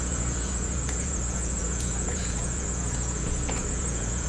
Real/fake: fake